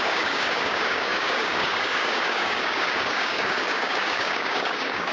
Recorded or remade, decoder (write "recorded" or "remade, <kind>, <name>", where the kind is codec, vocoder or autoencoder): remade, codec, DAC